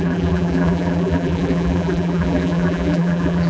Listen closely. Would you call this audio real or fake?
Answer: fake